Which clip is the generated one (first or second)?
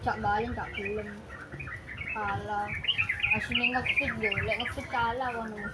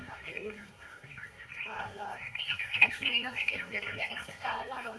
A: second